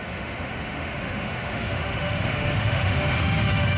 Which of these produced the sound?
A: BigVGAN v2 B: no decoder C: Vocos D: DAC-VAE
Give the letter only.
D